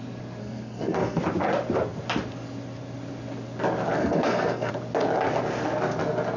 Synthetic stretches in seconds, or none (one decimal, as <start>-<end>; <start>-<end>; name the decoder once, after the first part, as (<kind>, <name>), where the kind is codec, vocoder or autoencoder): 0.4-1.2 (codec, SNAC); 4.0-4.7